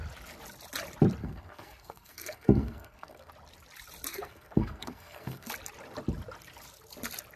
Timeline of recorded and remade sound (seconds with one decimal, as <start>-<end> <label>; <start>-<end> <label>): 0.0-1.2 recorded; 1.2-3.3 remade; 3.3-4.1 recorded; 4.1-5.5 remade; 5.5-7.4 recorded